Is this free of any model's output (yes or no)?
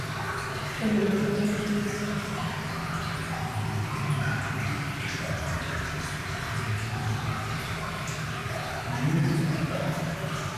yes